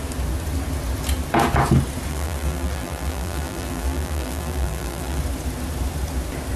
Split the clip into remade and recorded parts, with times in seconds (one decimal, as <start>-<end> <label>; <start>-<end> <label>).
0.0-2.1 recorded; 2.1-5.2 remade; 5.2-6.6 recorded